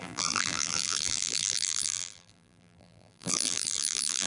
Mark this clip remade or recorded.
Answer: remade